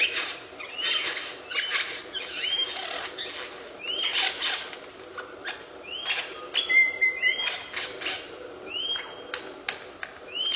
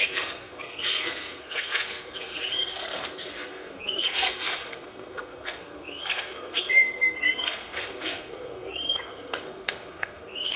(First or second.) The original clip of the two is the first